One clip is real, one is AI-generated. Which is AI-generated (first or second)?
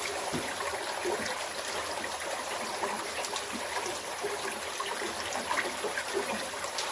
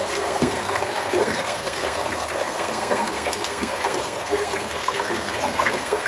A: second